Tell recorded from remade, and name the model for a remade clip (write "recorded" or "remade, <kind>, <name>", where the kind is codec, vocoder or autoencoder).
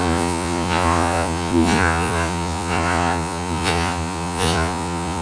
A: remade, vocoder, Vocos